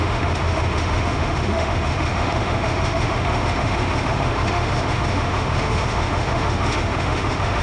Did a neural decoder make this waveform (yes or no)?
yes